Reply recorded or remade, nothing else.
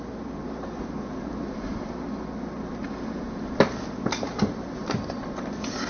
recorded